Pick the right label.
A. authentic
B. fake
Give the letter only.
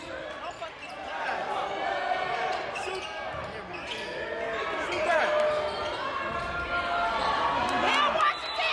A